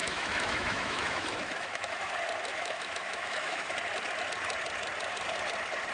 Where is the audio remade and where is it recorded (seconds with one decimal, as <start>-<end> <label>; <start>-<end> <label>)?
0.0-2.1 remade; 2.1-2.5 recorded; 2.5-3.7 remade; 3.7-5.9 recorded